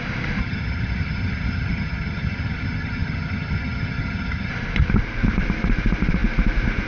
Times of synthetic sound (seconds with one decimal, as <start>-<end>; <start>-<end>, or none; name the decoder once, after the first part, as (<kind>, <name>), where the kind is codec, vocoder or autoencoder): 0.4-4.5 (vocoder, HiFi-GAN)